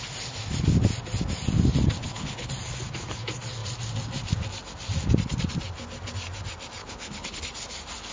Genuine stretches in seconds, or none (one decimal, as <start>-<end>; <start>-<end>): 0.0-2.0; 2.5-6.8; 7.4-8.1